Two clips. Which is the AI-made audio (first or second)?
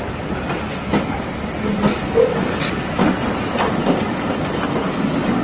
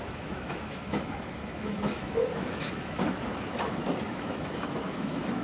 second